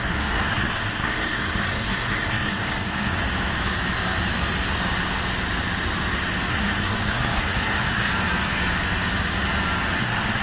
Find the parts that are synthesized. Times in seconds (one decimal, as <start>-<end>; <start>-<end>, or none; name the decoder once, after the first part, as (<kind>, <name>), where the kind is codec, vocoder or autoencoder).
0.0-3.2 (codec, SNAC); 6.5-8.1; 10.0-10.4